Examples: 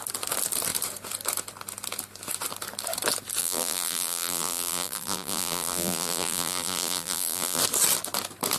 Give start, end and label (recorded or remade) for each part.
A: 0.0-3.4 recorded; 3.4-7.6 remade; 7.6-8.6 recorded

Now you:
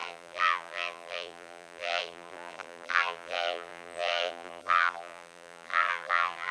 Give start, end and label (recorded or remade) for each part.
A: 0.0-6.5 remade

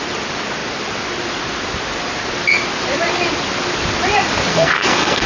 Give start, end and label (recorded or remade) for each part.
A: 0.0-4.5 recorded; 4.5-5.3 remade

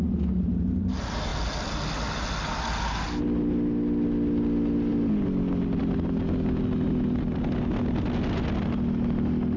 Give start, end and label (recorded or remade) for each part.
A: 0.0-9.6 recorded

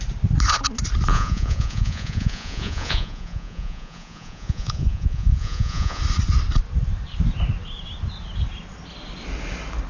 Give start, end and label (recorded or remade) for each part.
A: 0.0-1.1 recorded; 1.1-6.0 remade; 6.0-9.9 recorded

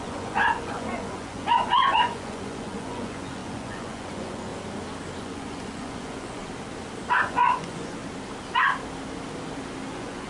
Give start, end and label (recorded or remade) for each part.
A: 0.0-4.5 remade; 4.5-5.2 recorded; 5.2-6.4 remade; 6.4-7.2 recorded; 7.2-8.0 remade; 8.0-9.9 recorded; 9.9-10.3 remade